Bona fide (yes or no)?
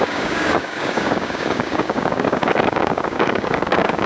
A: no